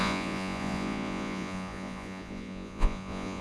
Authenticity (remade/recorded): remade